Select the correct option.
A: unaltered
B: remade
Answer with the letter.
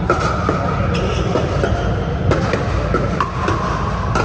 A